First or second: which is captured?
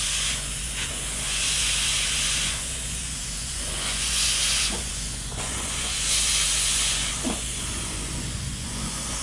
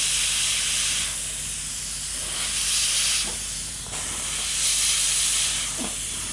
second